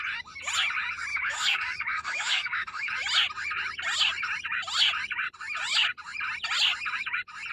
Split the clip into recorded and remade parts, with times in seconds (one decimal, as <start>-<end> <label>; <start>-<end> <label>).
0.0-1.1 recorded; 1.1-2.9 remade; 2.9-7.5 recorded